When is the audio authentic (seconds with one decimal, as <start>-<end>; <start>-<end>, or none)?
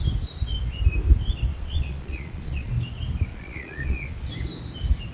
0.0-1.5; 2.7-3.3; 4.3-5.1